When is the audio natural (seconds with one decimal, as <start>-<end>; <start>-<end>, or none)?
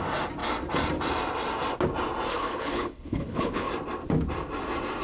0.0-2.3; 3.7-5.0